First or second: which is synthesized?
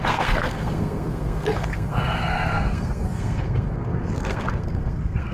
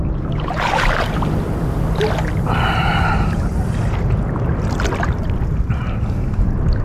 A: first